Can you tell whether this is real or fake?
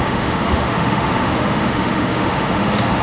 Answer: fake